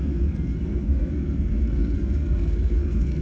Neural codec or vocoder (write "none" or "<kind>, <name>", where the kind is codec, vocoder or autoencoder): codec, SNAC